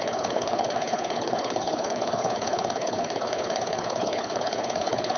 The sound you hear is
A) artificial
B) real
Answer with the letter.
A